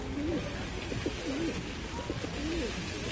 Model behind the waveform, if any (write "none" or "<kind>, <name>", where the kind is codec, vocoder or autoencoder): none